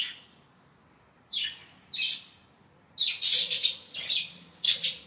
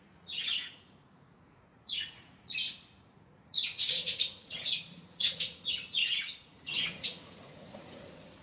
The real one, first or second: first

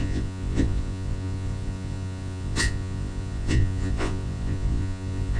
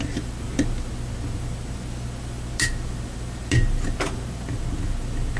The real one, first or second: second